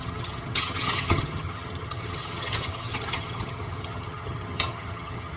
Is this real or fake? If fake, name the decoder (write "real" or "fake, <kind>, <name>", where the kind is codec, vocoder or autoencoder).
fake, vocoder, HiFi-GAN